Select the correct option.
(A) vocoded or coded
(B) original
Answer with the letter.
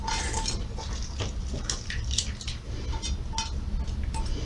B